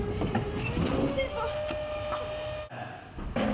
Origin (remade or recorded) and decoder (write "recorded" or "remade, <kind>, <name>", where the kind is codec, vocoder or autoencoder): recorded